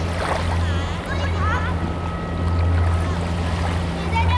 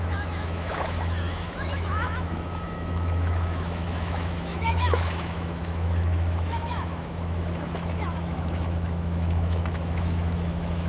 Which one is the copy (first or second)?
second